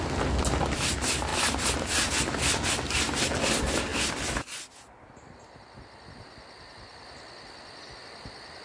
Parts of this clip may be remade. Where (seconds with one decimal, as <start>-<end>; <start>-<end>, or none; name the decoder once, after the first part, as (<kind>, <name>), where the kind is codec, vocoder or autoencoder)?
1.3-2.1 (vocoder, BigVGAN v2)